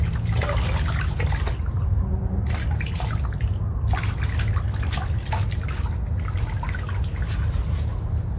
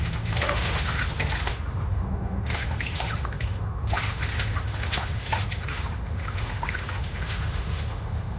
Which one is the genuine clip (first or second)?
first